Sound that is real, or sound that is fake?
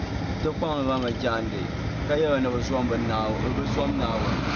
real